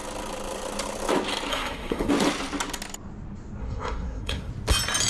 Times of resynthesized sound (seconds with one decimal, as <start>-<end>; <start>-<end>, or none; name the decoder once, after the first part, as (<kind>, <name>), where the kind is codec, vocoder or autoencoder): 1.5-2.1 (codec, SNAC); 3.6-4.5

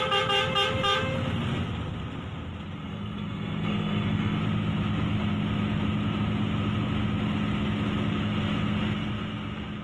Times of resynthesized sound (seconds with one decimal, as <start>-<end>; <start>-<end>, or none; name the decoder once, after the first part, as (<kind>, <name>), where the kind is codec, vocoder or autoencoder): 2.8-4.4 (codec, SNAC)

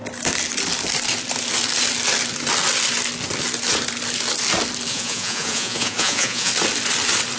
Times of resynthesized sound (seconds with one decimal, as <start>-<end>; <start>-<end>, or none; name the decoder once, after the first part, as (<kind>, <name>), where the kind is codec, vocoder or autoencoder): 4.9-6.5 (vocoder, Vocos)

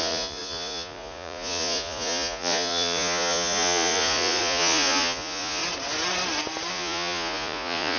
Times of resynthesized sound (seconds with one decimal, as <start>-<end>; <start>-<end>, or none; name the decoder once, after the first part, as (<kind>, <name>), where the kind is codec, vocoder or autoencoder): 0.0-5.6 (vocoder, Vocos); 6.7-8.0

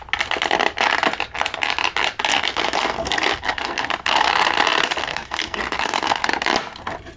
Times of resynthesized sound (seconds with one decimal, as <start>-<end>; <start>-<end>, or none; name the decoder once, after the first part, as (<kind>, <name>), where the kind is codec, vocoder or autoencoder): 2.3-4.3 (codec, SNAC); 5.0-6.3

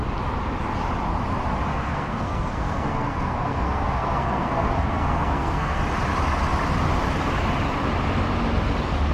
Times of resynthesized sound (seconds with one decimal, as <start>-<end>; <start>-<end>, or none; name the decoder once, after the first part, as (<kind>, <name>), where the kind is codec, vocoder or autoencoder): 1.7-5.8 (codec, SNAC)

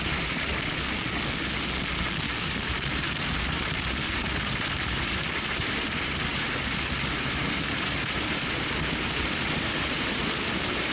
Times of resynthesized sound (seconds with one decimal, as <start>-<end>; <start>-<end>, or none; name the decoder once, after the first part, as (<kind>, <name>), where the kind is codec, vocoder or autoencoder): 0.0-0.5 (vocoder, BigVGAN v2); 2.4-10.9

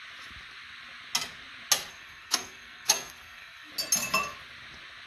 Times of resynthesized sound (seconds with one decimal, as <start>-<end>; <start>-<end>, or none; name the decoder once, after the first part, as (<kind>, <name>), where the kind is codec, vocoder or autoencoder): 1.9-3.7 (codec, SNAC)